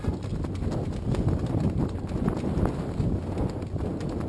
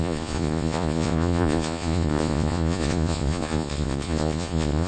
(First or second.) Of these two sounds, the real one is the first